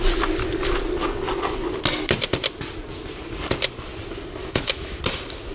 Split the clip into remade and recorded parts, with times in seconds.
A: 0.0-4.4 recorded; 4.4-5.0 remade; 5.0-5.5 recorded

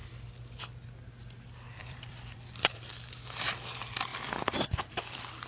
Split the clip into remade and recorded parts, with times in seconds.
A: 0.0-1.8 recorded; 1.8-2.9 remade; 2.9-4.1 recorded; 4.1-5.5 remade

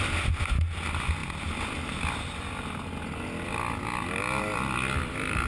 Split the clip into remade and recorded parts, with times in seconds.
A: 0.0-5.5 recorded

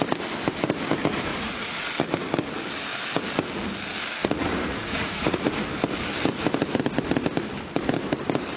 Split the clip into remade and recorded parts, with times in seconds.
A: 0.0-1.3 recorded; 1.3-1.9 remade; 1.9-4.2 recorded; 4.2-5.5 remade; 5.5-8.6 recorded

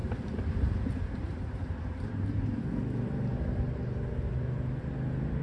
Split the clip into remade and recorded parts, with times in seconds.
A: 0.0-2.6 remade; 2.6-5.4 recorded

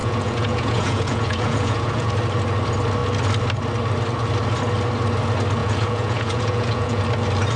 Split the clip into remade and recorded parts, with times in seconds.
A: 0.0-2.1 remade; 2.1-5.6 recorded; 5.6-7.0 remade; 7.0-7.6 recorded

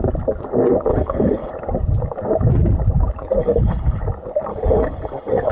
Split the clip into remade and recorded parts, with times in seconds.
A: 0.0-0.9 recorded; 0.9-1.5 remade; 1.5-3.4 recorded; 3.4-4.0 remade; 4.0-4.5 recorded; 4.5-5.5 remade